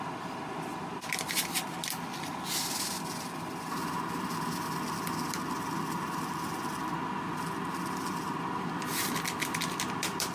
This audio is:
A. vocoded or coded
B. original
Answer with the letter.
B